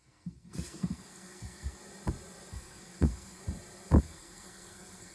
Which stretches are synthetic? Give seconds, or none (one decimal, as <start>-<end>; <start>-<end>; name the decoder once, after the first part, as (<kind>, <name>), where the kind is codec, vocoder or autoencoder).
0.0-1.8 (codec, SNAC); 2.5-3.4; 4.0-5.1